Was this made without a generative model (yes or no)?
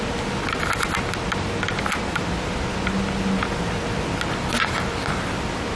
yes